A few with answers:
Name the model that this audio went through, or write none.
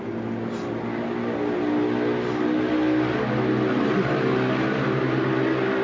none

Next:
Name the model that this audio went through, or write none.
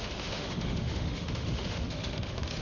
autoencoder, DAC-VAE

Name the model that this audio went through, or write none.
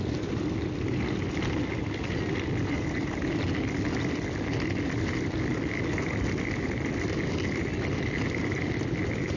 none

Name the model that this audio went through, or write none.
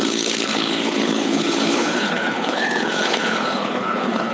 codec, HILCodec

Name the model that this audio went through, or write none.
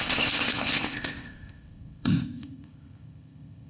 codec, ZipCodec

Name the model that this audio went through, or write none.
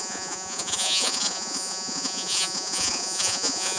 vocoder, Vocos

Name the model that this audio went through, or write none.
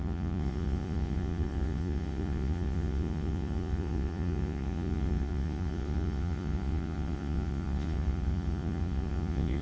vocoder, Vocos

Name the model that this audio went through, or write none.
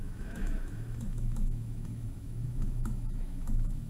autoencoder, DAC-VAE